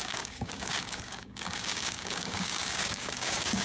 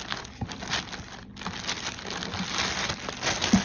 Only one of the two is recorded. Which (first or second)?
second